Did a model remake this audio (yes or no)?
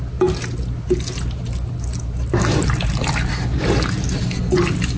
no